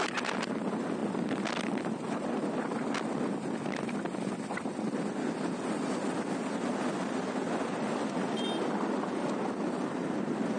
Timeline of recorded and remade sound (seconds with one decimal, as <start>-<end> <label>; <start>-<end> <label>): 0.0-10.6 recorded